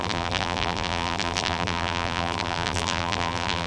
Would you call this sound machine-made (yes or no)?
yes